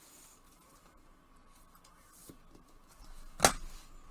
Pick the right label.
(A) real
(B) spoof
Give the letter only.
A